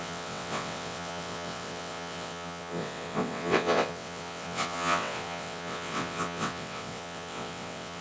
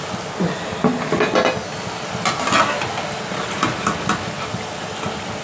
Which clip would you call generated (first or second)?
first